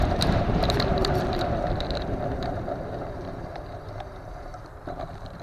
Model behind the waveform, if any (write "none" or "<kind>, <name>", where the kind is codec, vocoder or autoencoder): vocoder, BigVGAN v2